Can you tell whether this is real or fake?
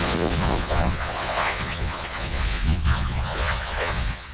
fake